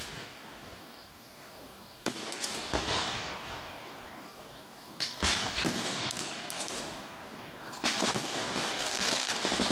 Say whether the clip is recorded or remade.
remade